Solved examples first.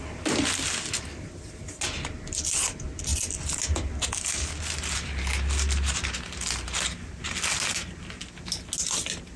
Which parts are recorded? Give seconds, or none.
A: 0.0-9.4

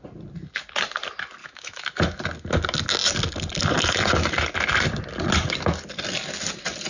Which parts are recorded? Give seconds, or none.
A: 0.0-1.4; 2.2-6.9

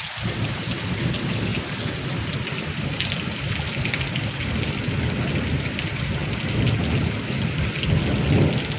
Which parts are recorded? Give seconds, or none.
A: 0.0-8.8